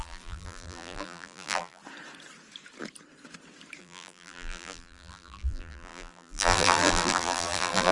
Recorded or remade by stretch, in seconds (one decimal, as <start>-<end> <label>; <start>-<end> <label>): 0.0-1.8 remade; 1.8-3.8 recorded; 3.8-7.9 remade